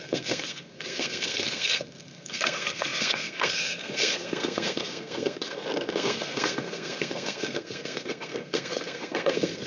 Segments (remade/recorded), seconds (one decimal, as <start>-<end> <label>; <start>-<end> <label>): 0.0-9.7 remade